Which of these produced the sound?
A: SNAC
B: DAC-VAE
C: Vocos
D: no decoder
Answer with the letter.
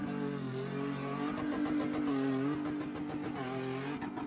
D